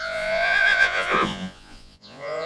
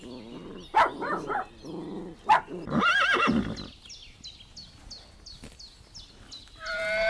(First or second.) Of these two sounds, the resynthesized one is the first